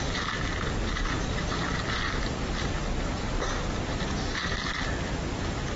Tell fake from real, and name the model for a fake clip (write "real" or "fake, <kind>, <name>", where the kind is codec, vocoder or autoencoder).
real